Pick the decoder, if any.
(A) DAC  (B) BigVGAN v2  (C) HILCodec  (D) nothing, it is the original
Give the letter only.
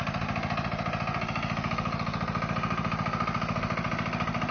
D